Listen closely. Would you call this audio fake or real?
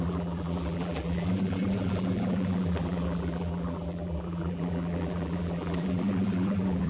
fake